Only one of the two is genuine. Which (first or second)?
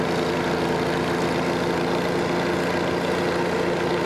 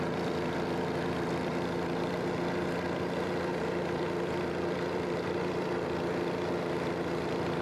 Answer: first